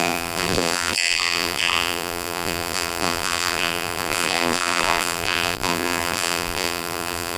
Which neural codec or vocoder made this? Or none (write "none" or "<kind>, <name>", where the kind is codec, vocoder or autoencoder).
vocoder, BigVGAN v2